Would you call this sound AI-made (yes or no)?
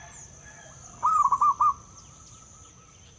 no